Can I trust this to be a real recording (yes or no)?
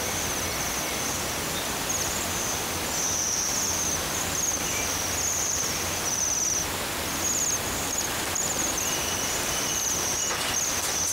yes